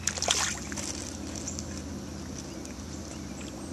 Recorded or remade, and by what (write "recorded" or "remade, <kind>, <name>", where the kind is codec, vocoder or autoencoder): recorded